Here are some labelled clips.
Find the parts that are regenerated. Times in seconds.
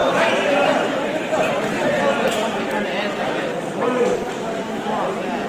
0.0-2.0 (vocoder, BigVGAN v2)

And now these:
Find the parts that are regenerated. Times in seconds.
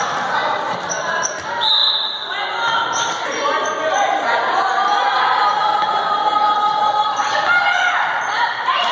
0.4-1.0 (vocoder, BigVGAN v2)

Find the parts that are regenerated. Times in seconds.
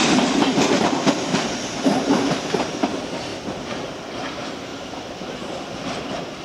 0.0-0.9 (vocoder, BigVGAN v2); 4.7-5.4